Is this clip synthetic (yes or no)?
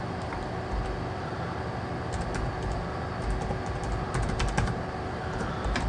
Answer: no